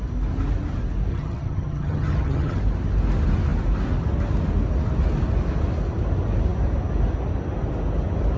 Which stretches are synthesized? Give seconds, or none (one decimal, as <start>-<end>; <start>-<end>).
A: 1.1-2.6